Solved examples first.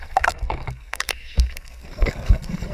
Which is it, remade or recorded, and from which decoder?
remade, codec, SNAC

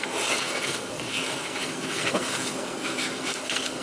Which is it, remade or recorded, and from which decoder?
remade, codec, SNAC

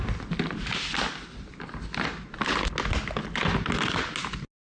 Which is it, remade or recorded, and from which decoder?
recorded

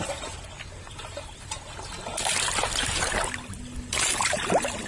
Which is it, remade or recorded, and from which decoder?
recorded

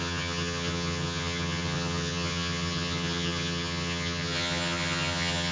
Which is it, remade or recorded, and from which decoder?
remade, vocoder, HiFi-GAN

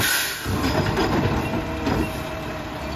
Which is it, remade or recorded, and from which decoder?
remade, vocoder, BigVGAN v2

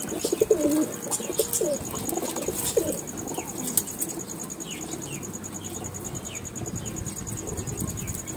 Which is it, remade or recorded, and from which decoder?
recorded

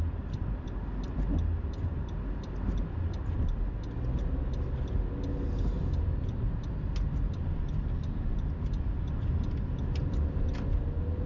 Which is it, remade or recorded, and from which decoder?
recorded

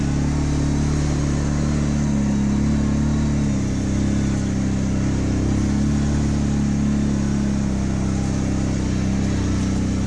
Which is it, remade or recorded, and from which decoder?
recorded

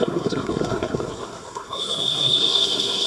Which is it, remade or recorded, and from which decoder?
remade, codec, SNAC